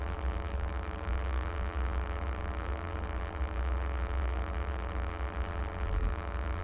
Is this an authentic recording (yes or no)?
no